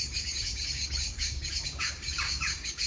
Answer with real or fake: fake